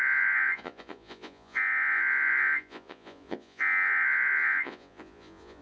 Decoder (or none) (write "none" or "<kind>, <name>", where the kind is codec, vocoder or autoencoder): vocoder, Vocos